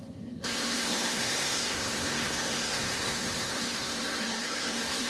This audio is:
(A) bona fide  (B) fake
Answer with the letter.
B